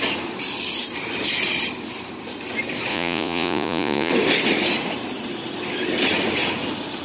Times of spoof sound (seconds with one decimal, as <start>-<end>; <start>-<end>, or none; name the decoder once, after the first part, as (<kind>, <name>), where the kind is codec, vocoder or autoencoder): 2.9-4.1 (vocoder, Vocos)